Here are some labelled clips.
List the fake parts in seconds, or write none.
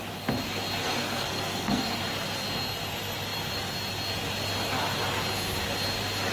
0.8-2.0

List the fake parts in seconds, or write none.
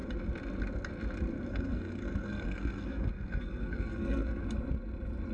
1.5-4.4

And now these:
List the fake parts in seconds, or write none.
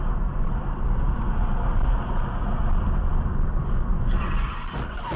none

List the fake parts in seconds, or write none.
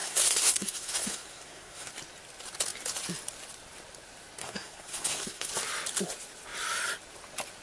0.0-1.9; 4.4-5.5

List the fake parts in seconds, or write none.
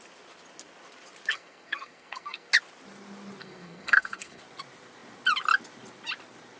1.3-2.5; 3.4-4.4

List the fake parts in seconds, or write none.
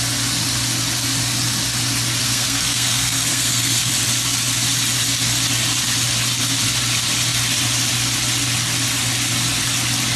2.2-3.9